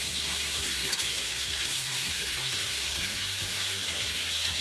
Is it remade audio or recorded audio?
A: remade